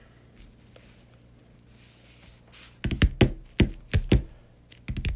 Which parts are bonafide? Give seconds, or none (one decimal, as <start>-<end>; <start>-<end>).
0.0-5.2